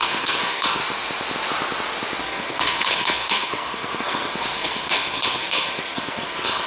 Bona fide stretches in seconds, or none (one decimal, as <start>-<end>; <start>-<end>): 0.8-2.2